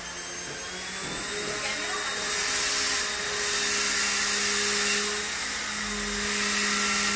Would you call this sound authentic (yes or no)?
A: yes